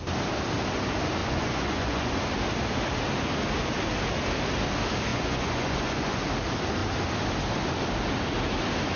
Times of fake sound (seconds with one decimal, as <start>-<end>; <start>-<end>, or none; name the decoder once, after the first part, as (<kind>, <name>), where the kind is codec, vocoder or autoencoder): 1.2-2.1 (vocoder, Vocos); 5.1-6.2